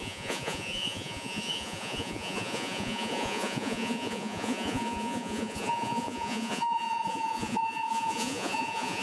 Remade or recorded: remade